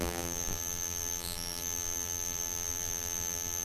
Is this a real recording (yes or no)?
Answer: no